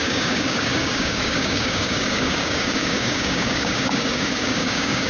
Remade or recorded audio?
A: remade